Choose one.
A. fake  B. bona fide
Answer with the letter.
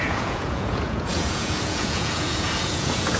A